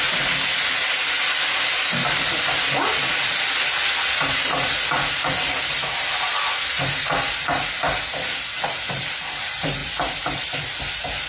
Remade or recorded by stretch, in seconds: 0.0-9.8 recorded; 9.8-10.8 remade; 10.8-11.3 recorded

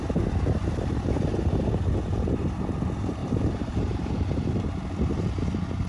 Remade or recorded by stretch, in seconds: 0.0-3.2 recorded; 3.2-4.5 remade; 4.5-5.9 recorded

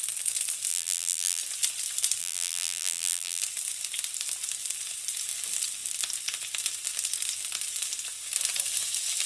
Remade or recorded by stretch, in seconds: 0.0-0.7 recorded; 0.7-1.4 remade; 1.4-2.2 recorded; 2.2-3.4 remade; 3.4-9.3 recorded

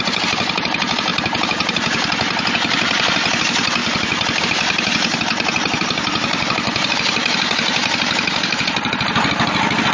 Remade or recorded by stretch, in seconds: 0.0-3.8 recorded; 3.8-4.4 remade; 4.4-9.9 recorded

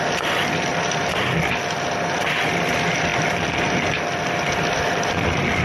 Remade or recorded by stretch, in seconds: 0.0-0.7 remade; 0.7-2.2 recorded; 2.2-3.1 remade; 3.1-4.7 recorded; 4.7-5.6 remade

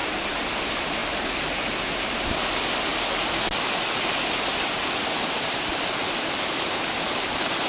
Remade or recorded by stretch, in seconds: 0.0-2.9 remade; 2.9-7.7 recorded

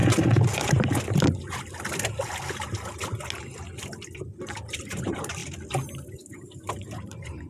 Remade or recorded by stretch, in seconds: 0.0-4.4 recorded; 4.4-5.4 remade; 5.4-6.1 recorded; 6.1-7.5 remade